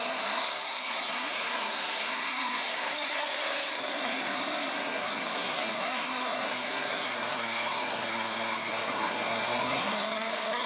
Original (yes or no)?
no